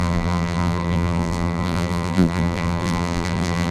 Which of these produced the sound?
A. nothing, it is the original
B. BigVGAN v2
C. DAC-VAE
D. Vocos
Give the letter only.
B